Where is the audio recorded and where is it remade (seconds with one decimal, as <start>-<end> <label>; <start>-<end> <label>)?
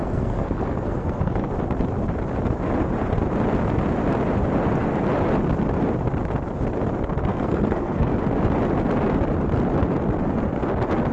0.0-1.5 remade; 1.5-7.3 recorded; 7.3-8.1 remade; 8.1-11.1 recorded